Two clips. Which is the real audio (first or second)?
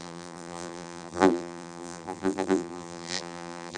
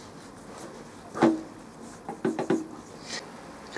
second